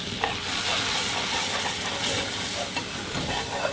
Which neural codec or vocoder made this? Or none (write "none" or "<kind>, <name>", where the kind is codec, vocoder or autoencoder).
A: none